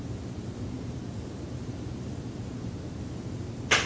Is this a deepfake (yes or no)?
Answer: no